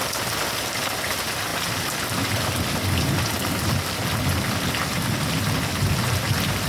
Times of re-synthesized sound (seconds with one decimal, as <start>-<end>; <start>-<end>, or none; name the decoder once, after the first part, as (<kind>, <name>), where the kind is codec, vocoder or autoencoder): none